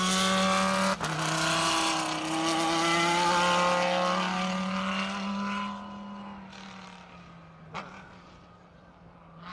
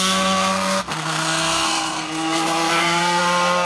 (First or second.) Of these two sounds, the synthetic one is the second